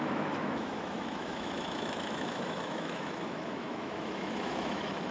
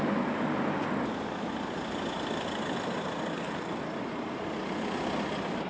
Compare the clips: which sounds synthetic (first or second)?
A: first